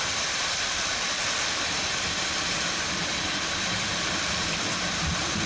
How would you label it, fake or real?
real